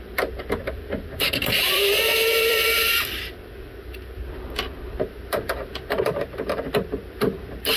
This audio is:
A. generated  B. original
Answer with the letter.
A